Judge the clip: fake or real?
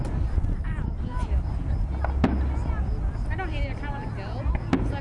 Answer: real